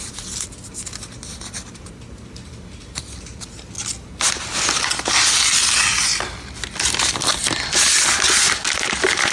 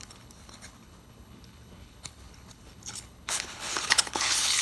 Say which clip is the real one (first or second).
first